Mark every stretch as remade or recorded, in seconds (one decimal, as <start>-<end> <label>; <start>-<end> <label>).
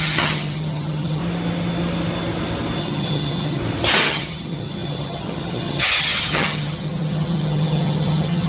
0.0-1.2 remade; 1.2-2.8 recorded; 2.8-3.6 remade; 3.6-4.1 recorded; 4.1-8.5 remade